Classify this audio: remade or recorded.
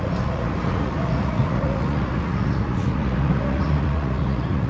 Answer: remade